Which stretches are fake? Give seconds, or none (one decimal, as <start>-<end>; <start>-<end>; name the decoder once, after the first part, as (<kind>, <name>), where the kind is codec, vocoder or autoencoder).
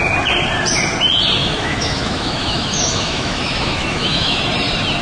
1.4-4.4 (autoencoder, DAC-VAE)